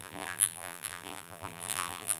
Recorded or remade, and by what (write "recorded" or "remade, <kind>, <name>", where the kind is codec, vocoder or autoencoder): remade, vocoder, BigVGAN v2